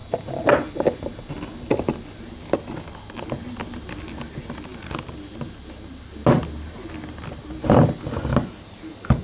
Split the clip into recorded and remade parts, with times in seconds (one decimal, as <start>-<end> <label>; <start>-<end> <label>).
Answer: 0.0-9.2 recorded

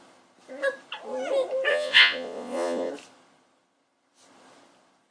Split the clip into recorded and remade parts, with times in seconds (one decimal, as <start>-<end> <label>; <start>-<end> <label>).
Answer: 0.0-1.7 recorded; 1.7-2.9 remade; 2.9-5.1 recorded

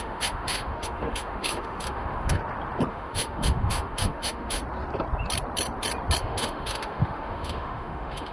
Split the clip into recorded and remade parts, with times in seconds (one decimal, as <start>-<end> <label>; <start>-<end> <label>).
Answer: 0.0-2.4 remade; 2.4-2.9 recorded; 2.9-4.6 remade; 4.6-6.2 recorded; 6.2-8.3 remade